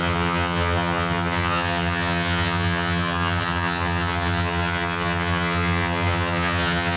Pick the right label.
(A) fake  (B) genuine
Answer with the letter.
A